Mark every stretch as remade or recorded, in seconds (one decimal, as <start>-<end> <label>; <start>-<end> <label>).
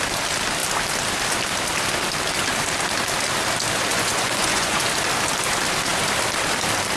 0.0-3.9 recorded; 3.9-4.8 remade; 4.8-7.0 recorded